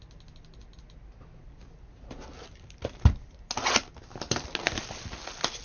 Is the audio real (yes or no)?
yes